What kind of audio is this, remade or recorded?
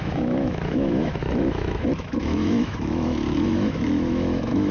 remade